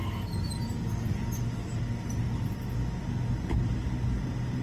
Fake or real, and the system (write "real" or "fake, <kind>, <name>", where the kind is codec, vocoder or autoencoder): real